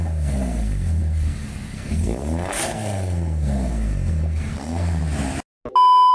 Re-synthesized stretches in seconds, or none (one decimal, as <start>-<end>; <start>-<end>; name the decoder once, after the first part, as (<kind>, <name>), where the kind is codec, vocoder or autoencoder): 0.0-5.0 (codec, SNAC)